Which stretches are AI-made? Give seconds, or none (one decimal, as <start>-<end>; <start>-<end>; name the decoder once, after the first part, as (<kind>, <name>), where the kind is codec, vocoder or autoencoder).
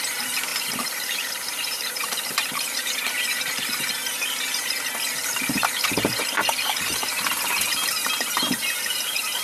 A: 0.0-4.0 (vocoder, BigVGAN v2); 5.2-9.4